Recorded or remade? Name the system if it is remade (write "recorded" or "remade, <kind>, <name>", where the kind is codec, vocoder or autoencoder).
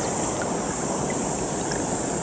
recorded